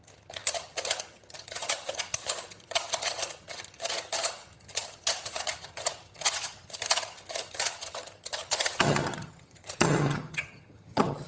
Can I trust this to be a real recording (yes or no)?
no